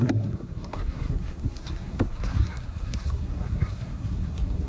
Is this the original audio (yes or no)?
no